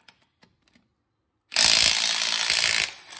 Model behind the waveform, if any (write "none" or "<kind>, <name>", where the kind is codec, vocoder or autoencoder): none